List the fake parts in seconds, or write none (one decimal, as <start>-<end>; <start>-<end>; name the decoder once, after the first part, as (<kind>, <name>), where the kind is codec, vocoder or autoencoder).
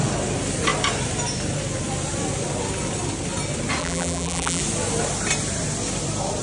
3.8-4.6 (vocoder, BigVGAN v2)